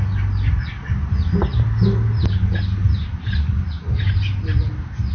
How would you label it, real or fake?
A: real